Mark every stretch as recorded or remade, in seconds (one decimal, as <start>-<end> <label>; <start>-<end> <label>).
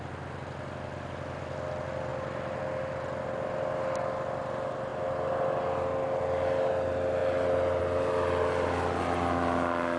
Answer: 0.0-10.0 recorded